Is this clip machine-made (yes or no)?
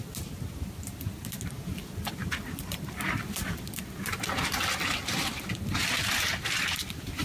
no